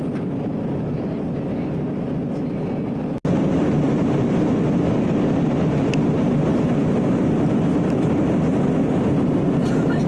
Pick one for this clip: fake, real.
real